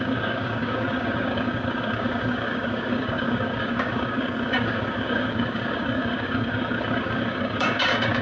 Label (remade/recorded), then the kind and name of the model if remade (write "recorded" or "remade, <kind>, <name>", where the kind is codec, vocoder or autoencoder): remade, codec, DAC